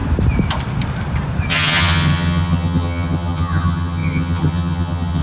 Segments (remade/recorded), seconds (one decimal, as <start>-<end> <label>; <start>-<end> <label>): 0.0-1.5 recorded; 1.5-5.2 remade